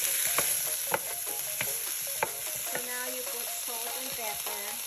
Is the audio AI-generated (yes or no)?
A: no